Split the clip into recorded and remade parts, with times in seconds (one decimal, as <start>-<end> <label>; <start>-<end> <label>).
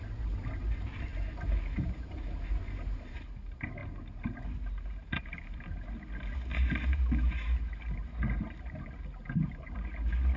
0.0-10.4 recorded